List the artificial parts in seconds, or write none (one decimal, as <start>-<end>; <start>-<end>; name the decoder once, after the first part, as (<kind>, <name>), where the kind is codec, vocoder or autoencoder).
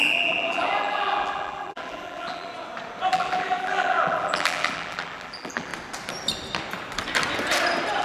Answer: 0.0-2.5 (vocoder, BigVGAN v2); 3.1-5.7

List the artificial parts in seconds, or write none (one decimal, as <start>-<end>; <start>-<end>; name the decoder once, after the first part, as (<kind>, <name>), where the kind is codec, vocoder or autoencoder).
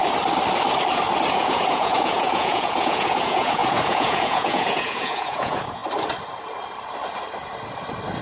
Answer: 1.3-5.8 (vocoder, Vocos)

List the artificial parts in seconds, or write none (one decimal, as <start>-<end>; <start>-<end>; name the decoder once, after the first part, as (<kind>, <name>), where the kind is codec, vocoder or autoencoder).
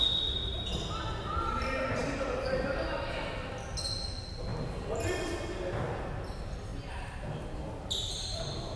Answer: none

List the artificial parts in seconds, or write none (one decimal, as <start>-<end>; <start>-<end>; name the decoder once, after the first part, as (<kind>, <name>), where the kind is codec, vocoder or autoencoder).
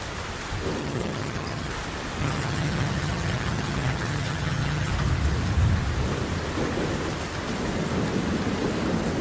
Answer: 0.8-1.7 (vocoder, HiFi-GAN); 2.2-4.9